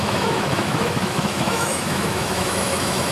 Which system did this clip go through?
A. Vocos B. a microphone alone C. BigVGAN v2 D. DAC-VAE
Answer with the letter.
D